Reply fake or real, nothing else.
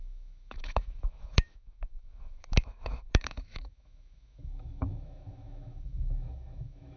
fake